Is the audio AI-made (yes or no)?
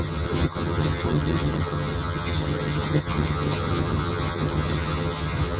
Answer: yes